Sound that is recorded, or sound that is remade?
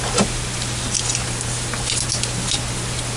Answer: recorded